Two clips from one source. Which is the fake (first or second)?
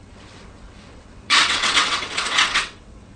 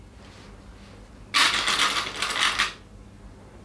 first